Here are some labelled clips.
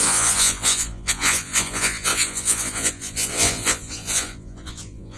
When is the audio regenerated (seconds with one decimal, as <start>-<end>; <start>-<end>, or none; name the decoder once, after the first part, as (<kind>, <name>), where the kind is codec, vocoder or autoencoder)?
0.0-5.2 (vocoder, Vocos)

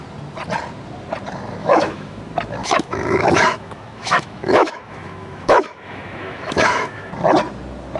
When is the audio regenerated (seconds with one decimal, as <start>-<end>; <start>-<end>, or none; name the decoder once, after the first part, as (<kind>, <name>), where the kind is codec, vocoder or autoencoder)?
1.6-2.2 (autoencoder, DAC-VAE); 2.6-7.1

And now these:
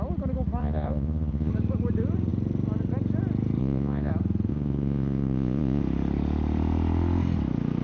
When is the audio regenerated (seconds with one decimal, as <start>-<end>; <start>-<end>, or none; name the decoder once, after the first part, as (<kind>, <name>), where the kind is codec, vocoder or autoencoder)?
0.6-1.5 (vocoder, Vocos); 3.6-4.1; 4.5-5.8

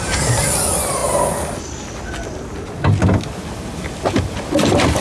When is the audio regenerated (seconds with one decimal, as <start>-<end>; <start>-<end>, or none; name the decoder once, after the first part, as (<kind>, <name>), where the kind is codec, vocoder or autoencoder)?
none

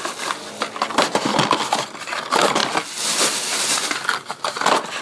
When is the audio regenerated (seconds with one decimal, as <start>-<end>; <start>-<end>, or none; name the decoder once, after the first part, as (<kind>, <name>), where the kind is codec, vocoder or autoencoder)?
none

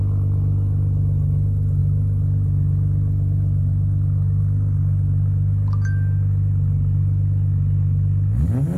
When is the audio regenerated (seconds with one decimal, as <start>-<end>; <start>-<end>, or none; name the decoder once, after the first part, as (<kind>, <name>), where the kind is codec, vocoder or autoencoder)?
none

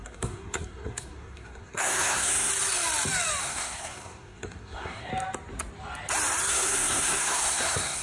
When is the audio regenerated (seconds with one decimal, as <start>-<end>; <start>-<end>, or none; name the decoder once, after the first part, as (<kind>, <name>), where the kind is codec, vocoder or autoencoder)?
0.0-2.5 (codec, SNAC); 3.4-5.1; 6.5-8.0

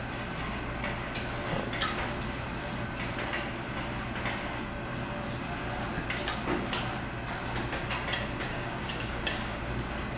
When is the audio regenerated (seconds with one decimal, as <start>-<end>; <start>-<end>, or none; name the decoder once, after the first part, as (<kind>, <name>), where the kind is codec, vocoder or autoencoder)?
8.5-9.6 (codec, DAC)